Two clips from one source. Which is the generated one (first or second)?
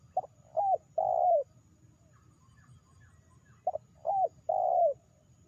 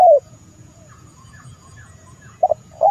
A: second